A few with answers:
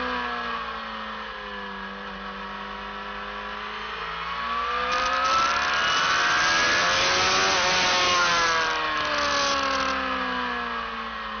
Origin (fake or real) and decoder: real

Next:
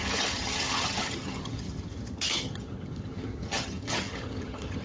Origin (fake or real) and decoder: fake, vocoder, HiFi-GAN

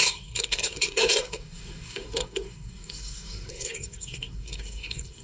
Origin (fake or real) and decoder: fake, codec, SNAC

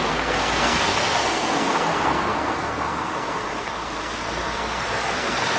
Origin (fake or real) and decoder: fake, codec, SNAC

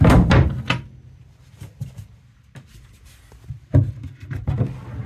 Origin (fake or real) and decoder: real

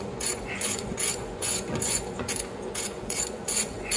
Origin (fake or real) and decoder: fake, vocoder, Vocos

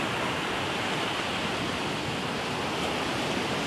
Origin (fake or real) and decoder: real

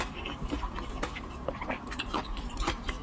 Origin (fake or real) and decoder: fake, vocoder, BigVGAN v2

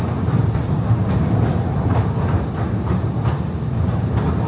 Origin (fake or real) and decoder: real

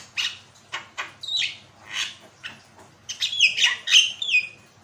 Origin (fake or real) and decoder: real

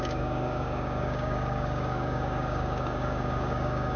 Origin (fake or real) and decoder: fake, codec, DAC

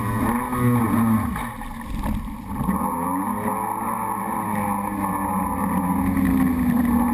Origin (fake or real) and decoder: real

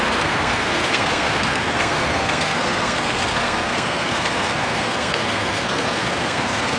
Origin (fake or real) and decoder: fake, codec, SNAC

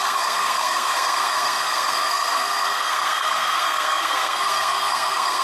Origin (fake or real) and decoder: fake, codec, SNAC